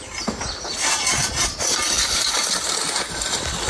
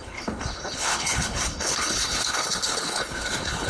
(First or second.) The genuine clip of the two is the first